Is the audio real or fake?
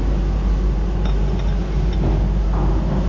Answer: real